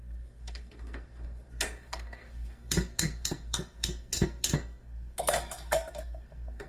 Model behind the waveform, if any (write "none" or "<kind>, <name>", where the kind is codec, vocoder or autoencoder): codec, SNAC